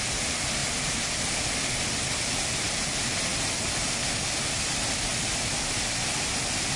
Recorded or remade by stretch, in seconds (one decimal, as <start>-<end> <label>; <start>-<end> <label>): 0.0-6.8 recorded